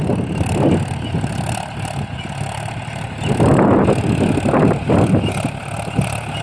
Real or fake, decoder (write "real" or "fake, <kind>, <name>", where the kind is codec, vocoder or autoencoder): real